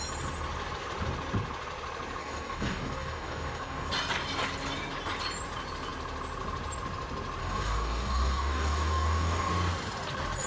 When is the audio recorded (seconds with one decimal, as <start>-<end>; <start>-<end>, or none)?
0.0-2.2; 3.9-7.4; 9.5-10.5